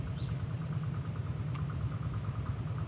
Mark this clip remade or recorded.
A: recorded